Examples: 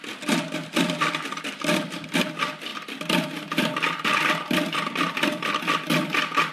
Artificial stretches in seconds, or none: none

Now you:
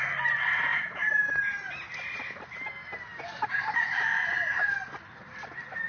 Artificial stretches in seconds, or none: none

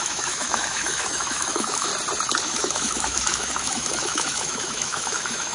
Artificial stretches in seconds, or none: 0.0-1.9 (autoencoder, DAC-VAE); 2.4-5.5

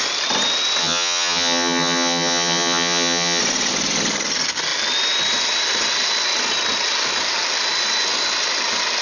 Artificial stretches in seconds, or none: 0.8-3.4 (vocoder, HiFi-GAN)

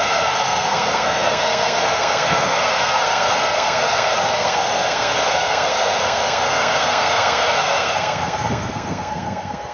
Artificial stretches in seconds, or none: 0.0-9.7 (codec, SNAC)

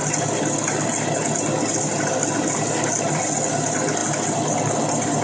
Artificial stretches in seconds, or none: none